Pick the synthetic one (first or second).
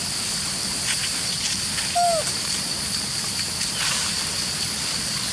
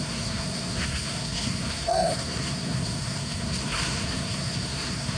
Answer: second